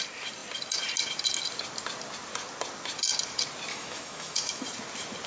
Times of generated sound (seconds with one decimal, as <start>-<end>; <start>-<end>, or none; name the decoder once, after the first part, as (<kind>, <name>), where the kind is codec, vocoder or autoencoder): 3.7-4.6 (autoencoder, DAC-VAE)